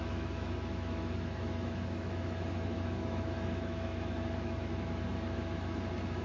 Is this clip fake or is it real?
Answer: fake